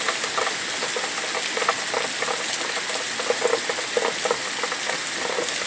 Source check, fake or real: real